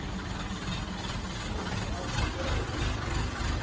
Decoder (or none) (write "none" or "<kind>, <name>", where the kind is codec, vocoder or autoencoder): none